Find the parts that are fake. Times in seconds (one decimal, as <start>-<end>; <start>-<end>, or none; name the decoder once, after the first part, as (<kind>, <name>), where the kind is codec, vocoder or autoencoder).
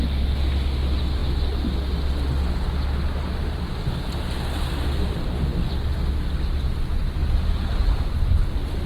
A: 7.2-8.1 (vocoder, Vocos)